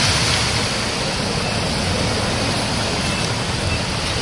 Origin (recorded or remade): recorded